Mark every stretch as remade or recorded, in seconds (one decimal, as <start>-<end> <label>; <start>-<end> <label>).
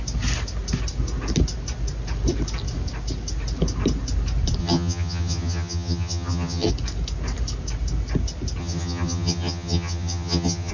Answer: 0.0-4.6 recorded; 4.6-6.7 remade; 6.7-8.6 recorded; 8.6-10.7 remade